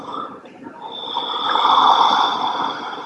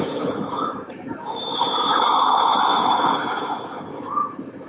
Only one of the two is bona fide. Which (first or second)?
first